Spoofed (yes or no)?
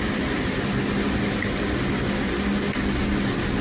no